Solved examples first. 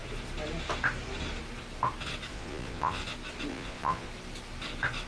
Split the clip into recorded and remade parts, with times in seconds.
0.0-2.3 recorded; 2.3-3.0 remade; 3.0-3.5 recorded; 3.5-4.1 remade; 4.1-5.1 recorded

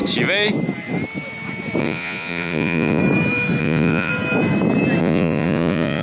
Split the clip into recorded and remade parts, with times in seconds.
0.0-1.8 recorded; 1.8-3.0 remade; 3.0-3.6 recorded; 3.6-4.1 remade; 4.1-5.0 recorded; 5.0-6.0 remade

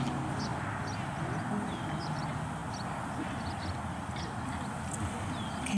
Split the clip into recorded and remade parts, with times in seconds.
0.0-5.8 recorded

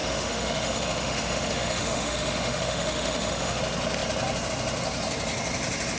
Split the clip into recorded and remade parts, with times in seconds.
0.0-3.6 remade; 3.6-6.0 recorded

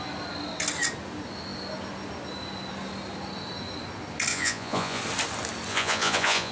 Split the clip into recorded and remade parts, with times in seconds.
0.0-4.3 recorded; 4.3-5.0 remade; 5.0-5.7 recorded; 5.7-6.5 remade

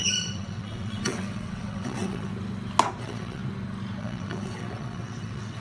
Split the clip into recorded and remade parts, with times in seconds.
0.0-2.3 remade; 2.3-3.0 recorded; 3.0-3.4 remade; 3.4-4.0 recorded; 4.0-5.6 remade

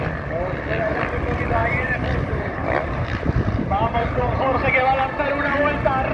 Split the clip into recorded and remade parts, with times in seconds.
0.0-1.6 recorded; 1.6-4.6 remade; 4.6-6.1 recorded

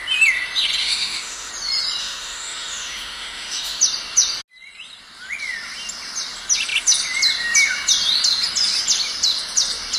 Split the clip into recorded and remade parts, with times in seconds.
0.0-0.8 recorded; 0.8-1.5 remade; 1.5-2.0 recorded; 2.0-3.8 remade; 3.8-10.0 recorded